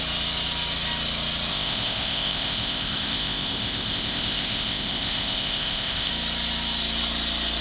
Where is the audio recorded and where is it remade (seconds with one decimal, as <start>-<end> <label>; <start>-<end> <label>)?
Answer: 0.0-1.5 recorded; 1.5-6.1 remade; 6.1-7.6 recorded